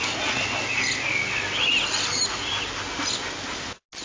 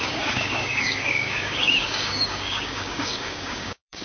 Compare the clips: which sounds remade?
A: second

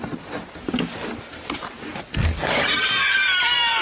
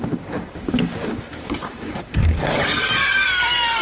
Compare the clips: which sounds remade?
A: second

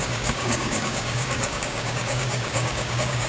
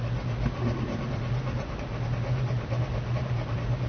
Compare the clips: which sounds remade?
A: first